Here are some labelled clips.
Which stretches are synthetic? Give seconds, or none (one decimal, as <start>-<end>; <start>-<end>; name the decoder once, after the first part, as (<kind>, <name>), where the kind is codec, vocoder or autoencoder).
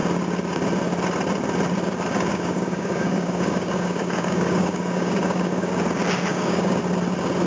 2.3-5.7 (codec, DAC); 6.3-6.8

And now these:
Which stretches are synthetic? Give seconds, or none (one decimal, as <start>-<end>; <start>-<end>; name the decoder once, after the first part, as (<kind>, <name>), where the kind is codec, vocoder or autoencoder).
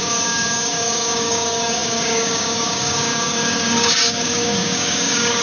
0.0-5.4 (codec, DAC)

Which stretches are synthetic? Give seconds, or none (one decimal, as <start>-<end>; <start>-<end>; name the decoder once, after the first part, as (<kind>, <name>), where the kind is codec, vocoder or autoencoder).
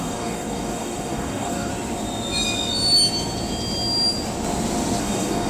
0.0-1.7 (codec, DAC); 5.0-5.5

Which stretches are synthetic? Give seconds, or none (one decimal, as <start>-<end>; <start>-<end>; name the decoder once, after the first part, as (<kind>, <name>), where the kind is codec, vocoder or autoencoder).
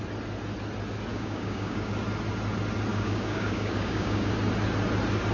1.1-1.9 (codec, DAC); 2.9-4.3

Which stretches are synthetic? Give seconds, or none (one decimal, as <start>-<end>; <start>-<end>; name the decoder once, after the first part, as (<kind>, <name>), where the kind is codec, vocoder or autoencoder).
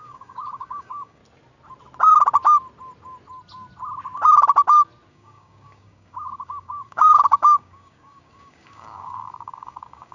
0.0-1.2 (codec, DAC); 5.1-10.1